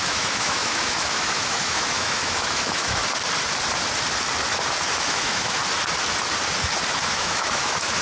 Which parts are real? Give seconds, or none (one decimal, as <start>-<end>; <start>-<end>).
3.0-4.9; 5.6-7.1